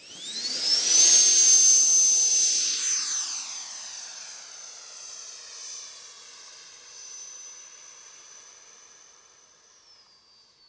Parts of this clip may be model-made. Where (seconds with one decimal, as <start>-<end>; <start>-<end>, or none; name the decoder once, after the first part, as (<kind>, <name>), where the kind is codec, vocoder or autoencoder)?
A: 4.1-5.4 (vocoder, Vocos)